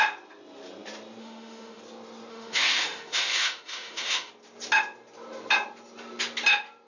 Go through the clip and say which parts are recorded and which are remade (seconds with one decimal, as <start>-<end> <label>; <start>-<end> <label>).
0.0-1.2 recorded; 1.2-1.8 remade; 1.8-2.3 recorded; 2.3-4.3 remade; 4.3-6.9 recorded